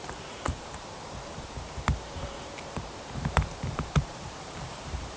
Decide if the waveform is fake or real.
fake